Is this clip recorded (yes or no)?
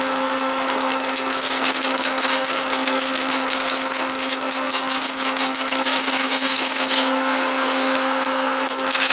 no